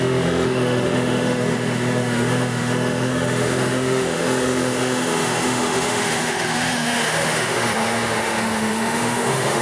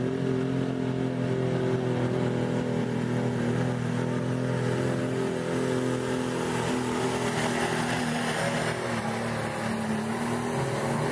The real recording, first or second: second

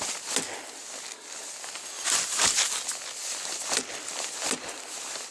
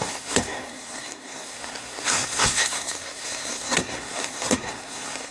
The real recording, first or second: first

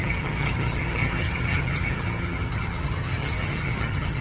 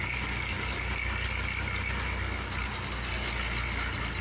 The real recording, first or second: second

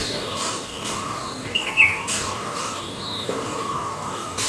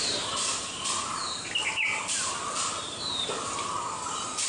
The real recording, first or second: second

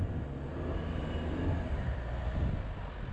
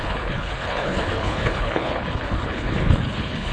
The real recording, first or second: first